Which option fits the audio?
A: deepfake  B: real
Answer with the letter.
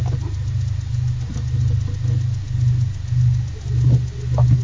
B